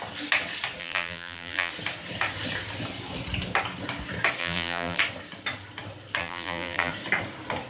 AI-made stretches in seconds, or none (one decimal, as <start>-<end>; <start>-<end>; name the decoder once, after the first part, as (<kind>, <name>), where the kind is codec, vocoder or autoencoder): 0.8-1.7 (vocoder, BigVGAN v2); 4.4-5.0; 6.2-6.9